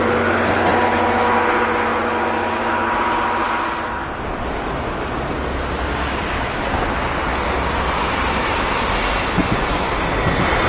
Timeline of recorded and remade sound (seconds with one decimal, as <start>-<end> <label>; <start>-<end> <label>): 0.0-9.4 recorded; 9.4-9.9 remade; 9.9-10.7 recorded